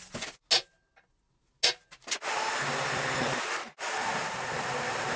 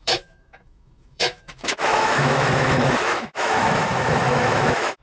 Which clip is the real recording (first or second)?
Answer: first